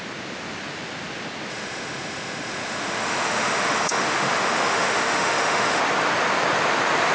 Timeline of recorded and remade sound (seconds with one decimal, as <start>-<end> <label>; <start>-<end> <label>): 0.0-1.5 recorded; 1.5-5.8 remade; 5.8-7.1 recorded